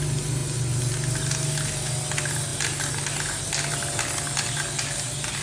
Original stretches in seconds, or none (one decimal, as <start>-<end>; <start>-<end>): 0.0-5.4